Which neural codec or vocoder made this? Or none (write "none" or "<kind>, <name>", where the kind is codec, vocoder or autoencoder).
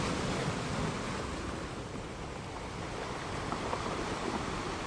none